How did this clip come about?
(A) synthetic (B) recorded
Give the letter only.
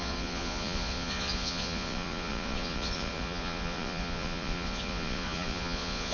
A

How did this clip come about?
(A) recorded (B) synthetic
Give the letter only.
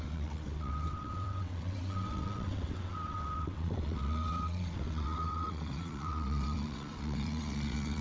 B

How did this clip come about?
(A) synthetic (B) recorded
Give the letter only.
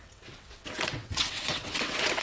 A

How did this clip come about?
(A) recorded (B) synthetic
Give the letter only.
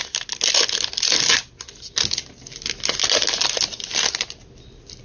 A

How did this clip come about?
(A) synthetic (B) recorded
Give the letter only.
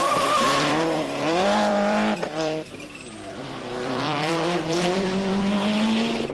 A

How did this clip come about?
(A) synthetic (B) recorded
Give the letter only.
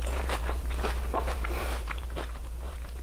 A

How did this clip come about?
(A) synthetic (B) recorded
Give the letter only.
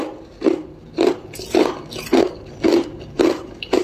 B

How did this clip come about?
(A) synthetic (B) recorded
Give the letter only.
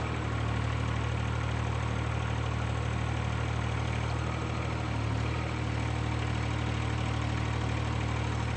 B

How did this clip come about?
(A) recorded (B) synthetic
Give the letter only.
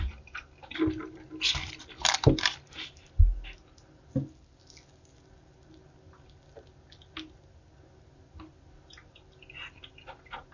A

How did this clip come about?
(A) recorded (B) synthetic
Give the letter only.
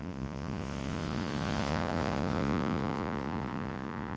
B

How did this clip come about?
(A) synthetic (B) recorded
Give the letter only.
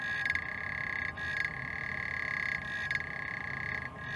B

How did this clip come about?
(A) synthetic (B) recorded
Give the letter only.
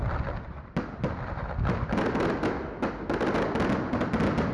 B